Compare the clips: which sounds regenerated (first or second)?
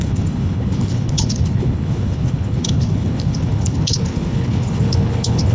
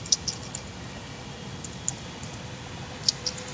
first